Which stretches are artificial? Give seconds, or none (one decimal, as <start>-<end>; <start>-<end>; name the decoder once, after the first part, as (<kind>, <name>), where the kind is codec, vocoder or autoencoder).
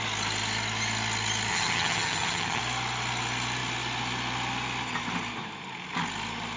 1.5-2.6 (vocoder, HiFi-GAN)